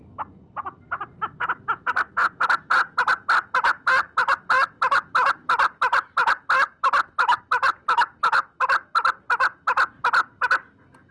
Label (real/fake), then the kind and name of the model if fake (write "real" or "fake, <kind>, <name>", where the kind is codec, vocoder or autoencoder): real